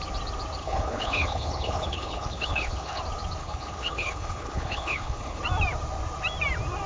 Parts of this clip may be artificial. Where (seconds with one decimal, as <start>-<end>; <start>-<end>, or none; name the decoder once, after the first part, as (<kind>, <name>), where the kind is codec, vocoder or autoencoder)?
0.6-3.0 (codec, HILCodec); 3.4-5.4